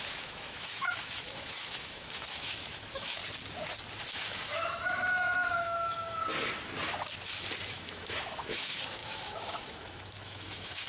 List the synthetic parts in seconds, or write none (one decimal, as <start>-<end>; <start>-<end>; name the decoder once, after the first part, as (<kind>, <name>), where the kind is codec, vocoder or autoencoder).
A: 0.0-3.2 (autoencoder, DAC-VAE); 4.1-6.2; 7.7-10.9